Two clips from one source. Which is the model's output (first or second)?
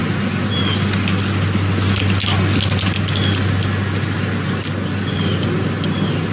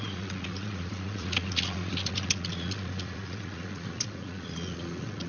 second